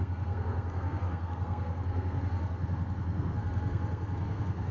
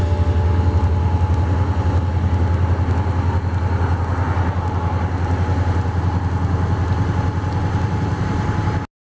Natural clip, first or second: second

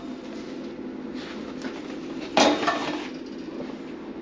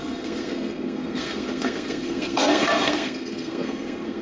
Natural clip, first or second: first